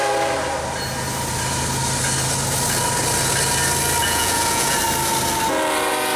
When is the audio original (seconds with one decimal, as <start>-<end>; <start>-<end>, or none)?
0.0-4.0; 4.8-6.2

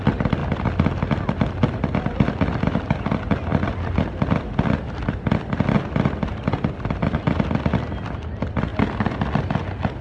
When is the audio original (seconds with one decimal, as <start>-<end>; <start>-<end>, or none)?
0.0-10.0